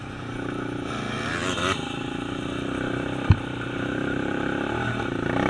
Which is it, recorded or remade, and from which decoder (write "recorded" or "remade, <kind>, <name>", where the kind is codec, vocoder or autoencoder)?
remade, vocoder, BigVGAN v2